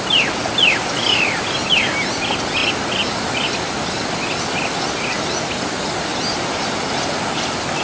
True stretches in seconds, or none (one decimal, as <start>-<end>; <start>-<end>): 0.0-6.1; 6.7-7.8